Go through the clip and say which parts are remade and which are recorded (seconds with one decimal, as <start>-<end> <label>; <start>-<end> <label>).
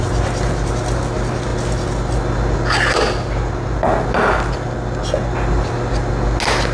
0.0-6.7 recorded